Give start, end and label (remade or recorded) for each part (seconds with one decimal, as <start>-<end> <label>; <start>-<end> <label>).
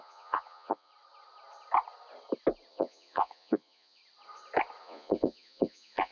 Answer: 0.0-0.9 remade; 0.9-2.7 recorded; 2.7-4.0 remade; 4.0-4.8 recorded; 4.8-6.1 remade